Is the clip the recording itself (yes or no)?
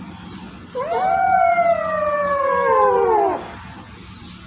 yes